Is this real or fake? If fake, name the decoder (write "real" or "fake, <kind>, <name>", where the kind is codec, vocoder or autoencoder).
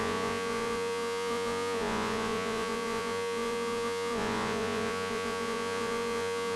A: fake, vocoder, Vocos